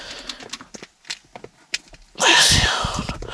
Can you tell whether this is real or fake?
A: real